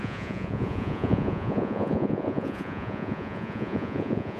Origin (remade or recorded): remade